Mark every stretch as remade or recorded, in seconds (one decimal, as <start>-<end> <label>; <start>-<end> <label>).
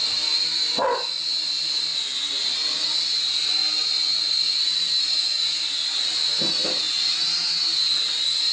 0.0-8.5 recorded